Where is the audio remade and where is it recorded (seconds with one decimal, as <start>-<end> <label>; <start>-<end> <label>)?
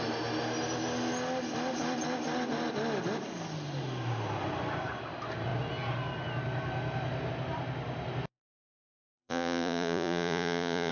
0.0-8.3 recorded; 8.3-10.9 remade